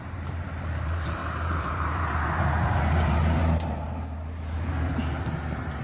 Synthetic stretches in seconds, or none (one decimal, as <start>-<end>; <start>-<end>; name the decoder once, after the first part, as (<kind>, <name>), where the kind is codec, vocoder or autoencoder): 0.0-5.8 (vocoder, BigVGAN v2)